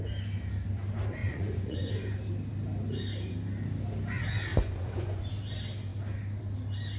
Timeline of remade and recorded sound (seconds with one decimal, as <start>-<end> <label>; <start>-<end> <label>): 0.0-1.2 recorded; 1.2-1.9 remade; 1.9-4.5 recorded; 4.5-5.3 remade; 5.3-7.0 recorded